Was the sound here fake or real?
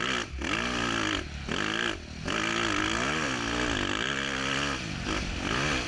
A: real